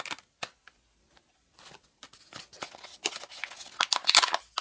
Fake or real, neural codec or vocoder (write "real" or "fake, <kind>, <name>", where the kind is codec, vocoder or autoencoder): real